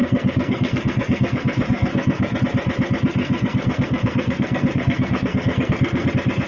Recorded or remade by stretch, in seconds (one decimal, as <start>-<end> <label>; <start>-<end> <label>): 0.0-2.4 remade; 2.4-3.2 recorded; 3.2-6.1 remade; 6.1-6.5 recorded